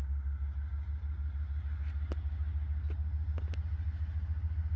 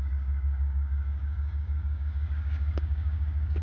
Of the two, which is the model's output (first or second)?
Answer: second